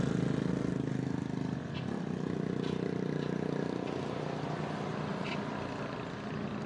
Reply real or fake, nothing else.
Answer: real